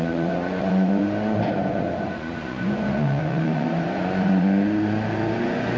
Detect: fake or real fake